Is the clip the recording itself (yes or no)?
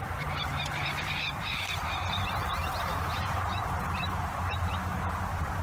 no